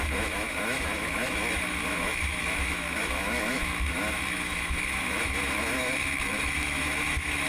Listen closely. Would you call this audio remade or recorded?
remade